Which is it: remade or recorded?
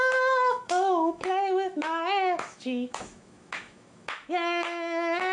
remade